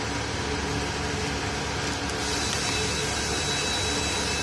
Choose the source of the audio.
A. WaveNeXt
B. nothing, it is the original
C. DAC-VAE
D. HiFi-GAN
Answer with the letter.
B